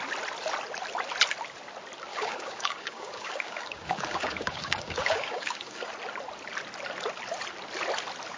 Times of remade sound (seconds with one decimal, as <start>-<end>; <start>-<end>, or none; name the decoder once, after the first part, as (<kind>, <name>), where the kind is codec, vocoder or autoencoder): 2.1-5.9 (codec, DAC)